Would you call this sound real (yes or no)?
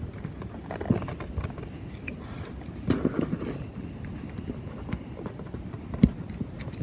yes